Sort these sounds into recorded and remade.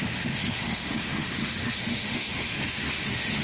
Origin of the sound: remade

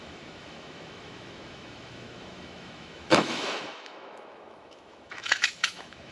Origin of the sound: remade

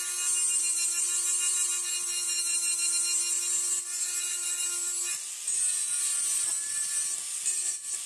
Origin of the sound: recorded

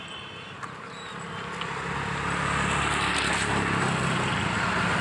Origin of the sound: recorded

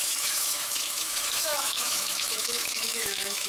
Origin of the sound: remade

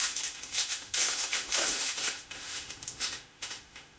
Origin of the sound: remade